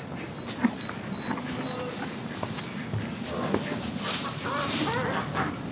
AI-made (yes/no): no